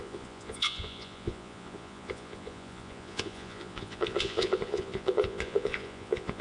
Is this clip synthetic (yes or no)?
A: yes